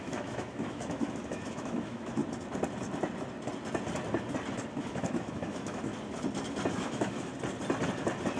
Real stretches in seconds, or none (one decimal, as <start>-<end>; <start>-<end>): 2.2-4.8; 5.9-6.7; 7.3-8.4